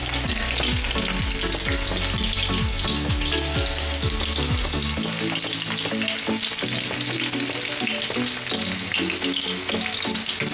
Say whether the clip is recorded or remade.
recorded